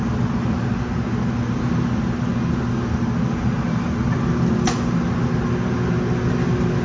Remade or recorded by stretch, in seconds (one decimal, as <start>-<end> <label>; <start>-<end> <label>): 0.0-6.8 recorded